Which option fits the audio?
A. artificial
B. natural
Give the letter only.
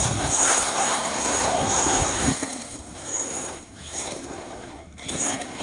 A